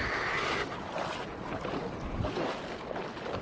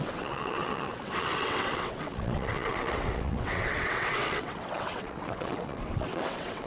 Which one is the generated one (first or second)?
second